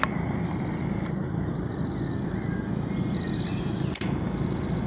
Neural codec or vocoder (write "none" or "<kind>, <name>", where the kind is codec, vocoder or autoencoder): none